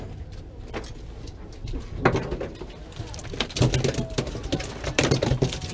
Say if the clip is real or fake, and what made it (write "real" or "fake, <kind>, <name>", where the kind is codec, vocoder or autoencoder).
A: real